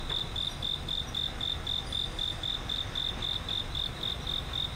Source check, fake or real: real